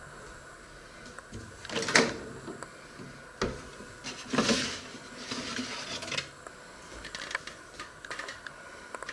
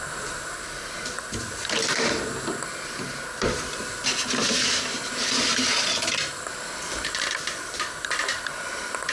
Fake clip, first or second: second